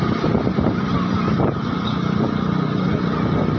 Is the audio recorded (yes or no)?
yes